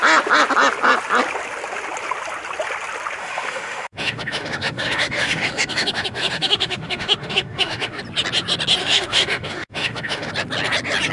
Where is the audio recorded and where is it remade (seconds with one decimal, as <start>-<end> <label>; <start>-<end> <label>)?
0.0-3.2 recorded; 3.2-8.0 remade; 8.0-8.8 recorded; 8.8-10.3 remade; 10.3-11.1 recorded